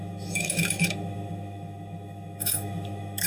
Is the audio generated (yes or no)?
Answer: yes